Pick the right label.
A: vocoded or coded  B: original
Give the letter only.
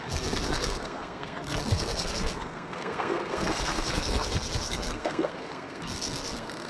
A